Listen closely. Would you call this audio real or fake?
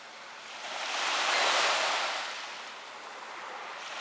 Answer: real